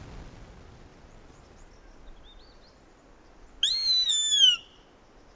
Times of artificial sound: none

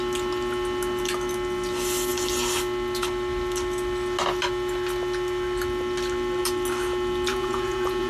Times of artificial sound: 7.3-8.1 (vocoder, Vocos)

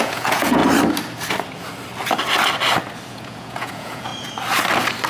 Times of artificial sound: 0.0-0.6 (vocoder, Vocos); 3.1-4.1

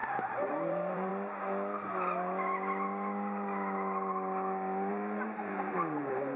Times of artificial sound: 0.0-1.1 (vocoder, BigVGAN v2); 4.9-6.4